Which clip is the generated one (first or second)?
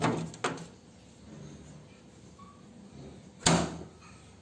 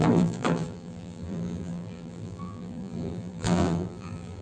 second